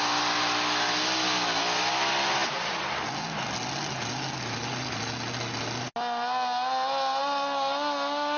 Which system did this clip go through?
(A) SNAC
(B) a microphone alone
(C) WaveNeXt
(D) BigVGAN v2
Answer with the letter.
B